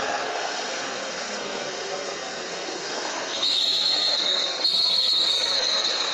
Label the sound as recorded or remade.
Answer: remade